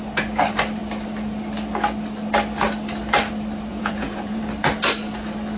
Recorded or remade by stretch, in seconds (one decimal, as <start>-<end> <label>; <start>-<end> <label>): 0.0-3.7 recorded; 3.7-4.4 remade; 4.4-5.6 recorded